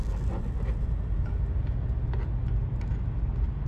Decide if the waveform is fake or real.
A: real